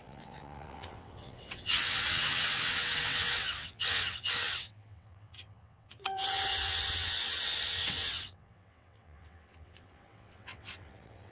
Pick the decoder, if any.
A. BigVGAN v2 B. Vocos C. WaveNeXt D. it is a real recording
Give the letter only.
C